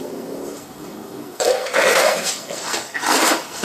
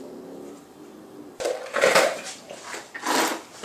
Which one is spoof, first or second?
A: first